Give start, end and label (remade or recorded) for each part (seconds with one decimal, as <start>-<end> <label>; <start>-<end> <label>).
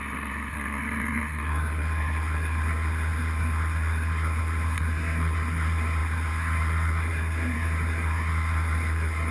0.0-9.3 remade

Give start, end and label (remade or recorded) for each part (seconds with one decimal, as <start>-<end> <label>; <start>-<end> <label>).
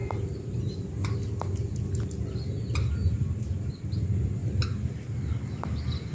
0.0-6.1 recorded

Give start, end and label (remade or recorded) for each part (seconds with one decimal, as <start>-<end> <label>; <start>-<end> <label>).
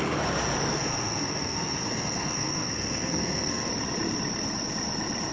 0.0-0.7 recorded; 0.7-3.7 remade; 3.7-5.3 recorded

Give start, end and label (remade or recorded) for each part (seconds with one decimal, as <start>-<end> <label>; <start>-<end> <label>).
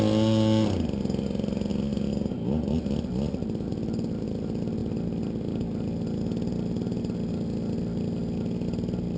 0.0-9.2 recorded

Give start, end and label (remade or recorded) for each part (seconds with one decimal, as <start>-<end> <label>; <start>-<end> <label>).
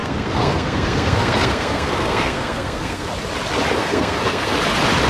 0.0-3.1 remade; 3.1-3.8 recorded; 3.8-4.5 remade; 4.5-5.1 recorded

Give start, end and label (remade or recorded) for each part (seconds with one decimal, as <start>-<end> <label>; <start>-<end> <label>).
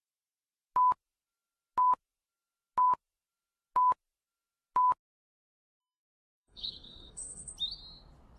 0.0-5.8 recorded; 5.8-7.5 remade; 7.5-8.4 recorded